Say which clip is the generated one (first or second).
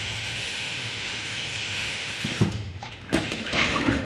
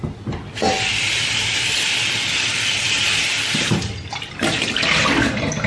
first